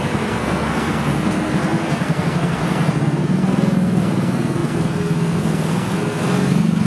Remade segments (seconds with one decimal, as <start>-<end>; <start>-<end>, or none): 0.0-6.9